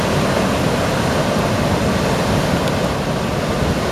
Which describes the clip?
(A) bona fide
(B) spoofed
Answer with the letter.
A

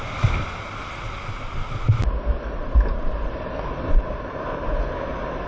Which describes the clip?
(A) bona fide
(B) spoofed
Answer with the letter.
A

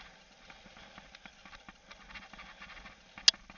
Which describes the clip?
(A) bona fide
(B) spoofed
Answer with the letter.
A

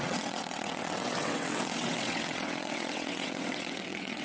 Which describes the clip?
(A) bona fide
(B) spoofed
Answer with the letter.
B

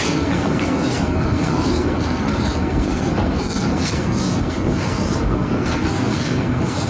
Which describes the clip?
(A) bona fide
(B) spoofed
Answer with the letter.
B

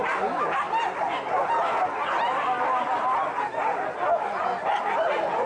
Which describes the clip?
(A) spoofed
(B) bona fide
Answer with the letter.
B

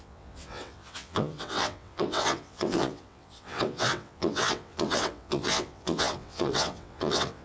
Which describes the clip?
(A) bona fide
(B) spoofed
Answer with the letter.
B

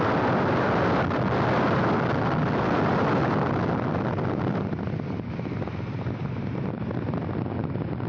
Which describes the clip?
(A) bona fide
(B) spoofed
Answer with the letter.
A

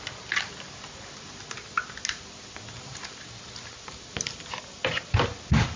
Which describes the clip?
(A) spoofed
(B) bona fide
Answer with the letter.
B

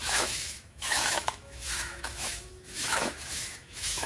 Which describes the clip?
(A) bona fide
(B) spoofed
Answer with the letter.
B